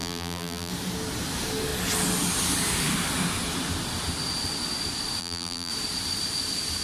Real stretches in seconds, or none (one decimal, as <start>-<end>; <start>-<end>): 0.7-5.2; 5.7-6.8